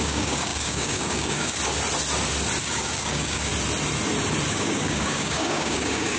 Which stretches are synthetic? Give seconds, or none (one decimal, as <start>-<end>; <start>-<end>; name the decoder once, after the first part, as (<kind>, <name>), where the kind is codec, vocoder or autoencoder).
0.0-1.6 (codec, DAC); 2.6-3.5; 4.5-6.2